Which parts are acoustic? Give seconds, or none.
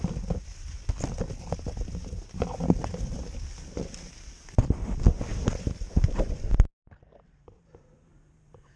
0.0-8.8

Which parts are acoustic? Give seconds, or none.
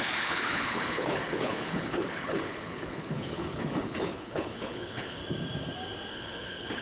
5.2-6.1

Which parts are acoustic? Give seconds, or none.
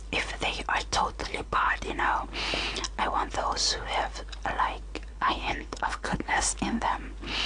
0.0-1.2; 1.7-5.1; 6.5-7.5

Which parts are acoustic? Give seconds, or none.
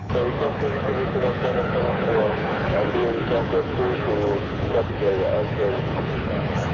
none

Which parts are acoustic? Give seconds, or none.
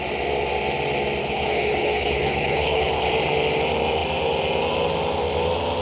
0.0-1.2; 3.1-5.8